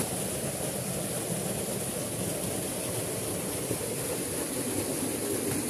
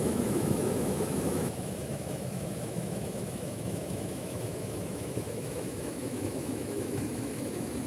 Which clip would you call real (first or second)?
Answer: first